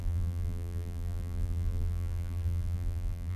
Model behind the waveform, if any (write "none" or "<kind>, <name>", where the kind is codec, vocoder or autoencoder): vocoder, BigVGAN v2